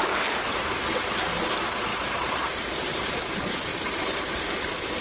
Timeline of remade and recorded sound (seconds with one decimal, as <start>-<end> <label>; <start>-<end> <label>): 0.0-1.9 recorded; 1.9-3.1 remade; 3.1-3.7 recorded; 3.7-4.2 remade; 4.2-5.0 recorded